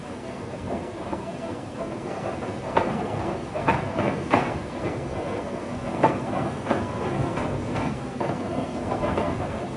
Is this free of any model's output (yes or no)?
no